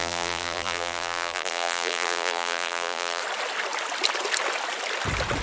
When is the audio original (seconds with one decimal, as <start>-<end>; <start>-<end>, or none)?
3.2-5.4